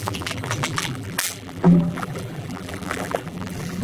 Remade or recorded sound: remade